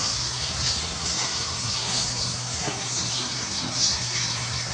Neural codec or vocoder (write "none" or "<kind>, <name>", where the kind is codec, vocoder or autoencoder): codec, SNAC